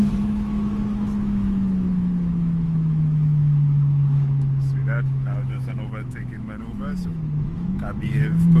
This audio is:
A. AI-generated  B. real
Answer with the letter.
A